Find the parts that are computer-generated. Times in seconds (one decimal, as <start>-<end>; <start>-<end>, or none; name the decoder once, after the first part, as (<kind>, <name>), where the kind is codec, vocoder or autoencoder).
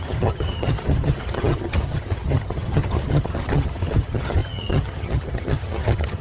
0.0-6.2 (vocoder, HiFi-GAN)